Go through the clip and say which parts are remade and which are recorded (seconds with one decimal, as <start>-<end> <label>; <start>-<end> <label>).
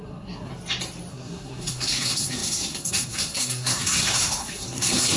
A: 0.0-0.5 remade; 0.5-1.1 recorded; 1.1-5.2 remade